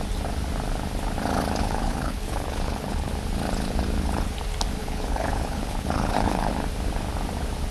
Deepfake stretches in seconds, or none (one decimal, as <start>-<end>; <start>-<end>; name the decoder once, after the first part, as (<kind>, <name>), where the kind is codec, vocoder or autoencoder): 1.6-3.1 (codec, HILCodec); 4.8-6.5